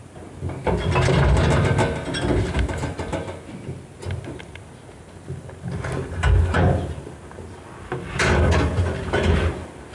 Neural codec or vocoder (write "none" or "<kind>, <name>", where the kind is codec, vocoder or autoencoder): none